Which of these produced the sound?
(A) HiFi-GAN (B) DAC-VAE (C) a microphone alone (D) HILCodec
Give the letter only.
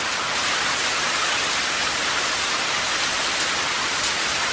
C